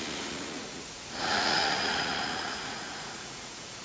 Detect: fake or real fake